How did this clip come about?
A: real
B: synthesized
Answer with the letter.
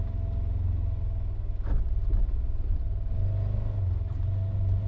A